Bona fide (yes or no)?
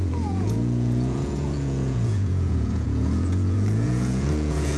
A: no